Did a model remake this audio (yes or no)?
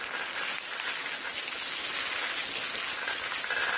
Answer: no